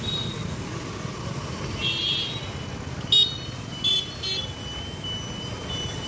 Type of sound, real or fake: real